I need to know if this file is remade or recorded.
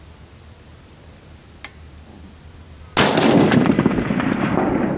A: recorded